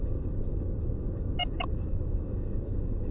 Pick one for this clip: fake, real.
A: fake